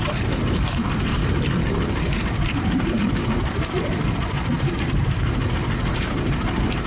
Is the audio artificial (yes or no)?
yes